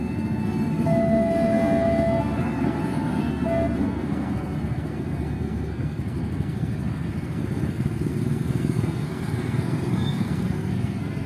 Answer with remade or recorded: remade